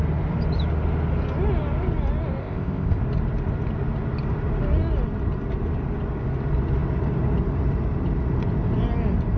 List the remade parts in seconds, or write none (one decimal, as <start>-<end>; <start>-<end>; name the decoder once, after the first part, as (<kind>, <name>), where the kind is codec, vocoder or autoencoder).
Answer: 2.4-3.0 (codec, ZipCodec)